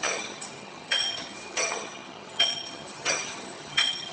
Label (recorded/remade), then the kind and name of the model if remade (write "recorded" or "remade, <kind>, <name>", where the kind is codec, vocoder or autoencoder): remade, vocoder, HiFi-GAN